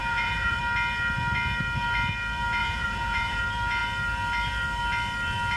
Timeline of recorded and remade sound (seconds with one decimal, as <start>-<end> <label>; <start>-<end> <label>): 0.0-0.6 remade; 0.6-2.6 recorded; 2.6-3.4 remade; 3.4-5.6 recorded